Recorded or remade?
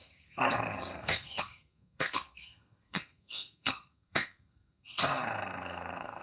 remade